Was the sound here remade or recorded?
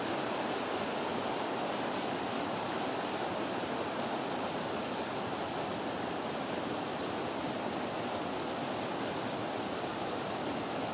remade